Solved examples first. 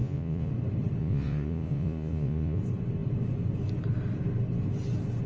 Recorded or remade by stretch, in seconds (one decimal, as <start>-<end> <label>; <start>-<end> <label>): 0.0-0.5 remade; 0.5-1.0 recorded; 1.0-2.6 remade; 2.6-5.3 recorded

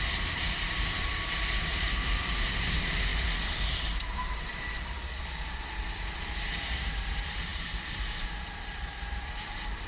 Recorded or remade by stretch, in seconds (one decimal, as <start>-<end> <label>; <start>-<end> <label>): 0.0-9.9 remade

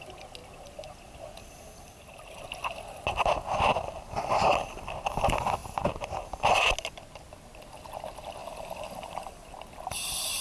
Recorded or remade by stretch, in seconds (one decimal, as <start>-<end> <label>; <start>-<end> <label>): 0.0-5.6 recorded; 5.6-6.4 remade; 6.4-10.4 recorded